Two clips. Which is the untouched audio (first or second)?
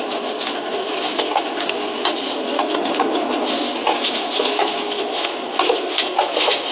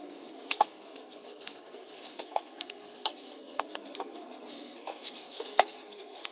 first